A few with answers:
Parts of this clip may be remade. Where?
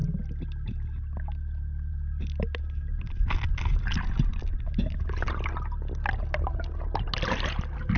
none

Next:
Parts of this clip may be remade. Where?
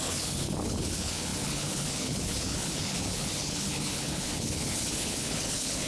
0.0-5.9 (codec, HILCodec)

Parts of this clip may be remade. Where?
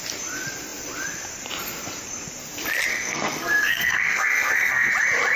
2.9-4.9 (codec, SNAC)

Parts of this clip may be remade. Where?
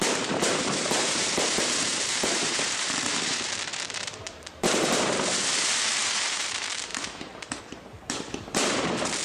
0.0-9.2 (vocoder, BigVGAN v2)